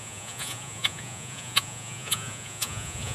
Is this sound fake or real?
fake